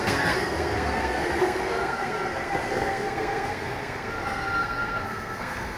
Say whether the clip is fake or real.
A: fake